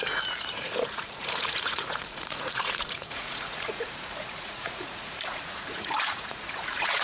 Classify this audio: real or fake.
fake